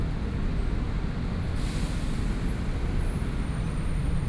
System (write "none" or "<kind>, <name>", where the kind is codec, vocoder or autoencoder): none